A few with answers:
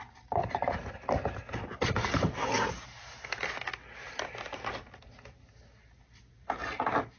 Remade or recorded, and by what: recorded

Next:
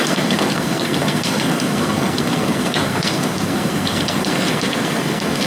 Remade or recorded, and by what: remade, codec, SNAC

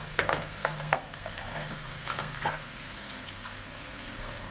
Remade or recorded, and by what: remade, codec, SNAC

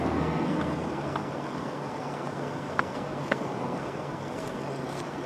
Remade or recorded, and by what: remade, codec, SNAC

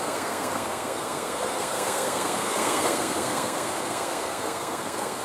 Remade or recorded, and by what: remade, codec, SNAC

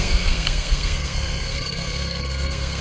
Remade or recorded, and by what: remade, codec, SNAC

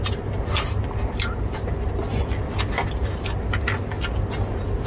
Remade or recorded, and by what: recorded